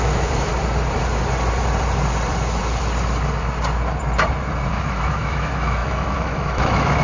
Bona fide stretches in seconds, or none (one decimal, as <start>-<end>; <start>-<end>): 0.5-4.7